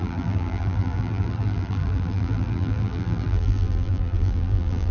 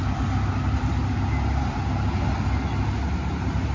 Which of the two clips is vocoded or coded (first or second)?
first